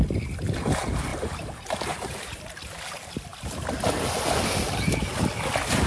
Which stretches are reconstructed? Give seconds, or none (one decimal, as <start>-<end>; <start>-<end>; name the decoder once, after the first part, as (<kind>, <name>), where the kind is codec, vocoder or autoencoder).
1.1-2.4 (vocoder, BigVGAN v2)